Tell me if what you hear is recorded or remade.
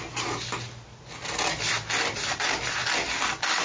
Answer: recorded